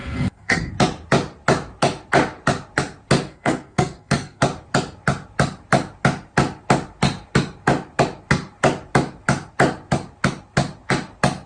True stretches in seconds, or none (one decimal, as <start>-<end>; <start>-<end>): 0.7-3.3; 4.4-11.5